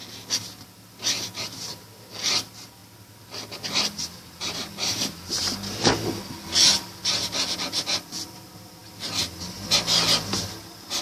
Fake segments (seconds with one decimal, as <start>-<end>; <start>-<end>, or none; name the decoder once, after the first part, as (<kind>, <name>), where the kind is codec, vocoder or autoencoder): none